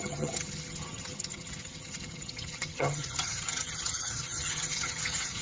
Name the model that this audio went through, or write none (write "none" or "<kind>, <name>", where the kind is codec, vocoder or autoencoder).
vocoder, HiFi-GAN